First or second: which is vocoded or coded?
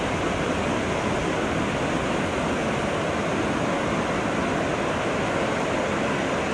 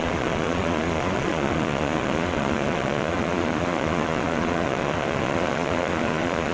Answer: second